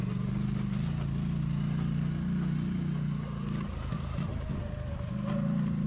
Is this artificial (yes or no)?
no